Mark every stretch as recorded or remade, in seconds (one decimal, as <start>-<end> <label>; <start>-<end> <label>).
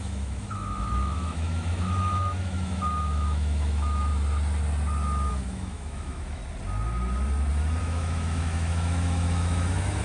0.0-4.1 remade; 4.1-5.3 recorded; 5.3-6.4 remade; 6.4-7.8 recorded; 7.8-10.0 remade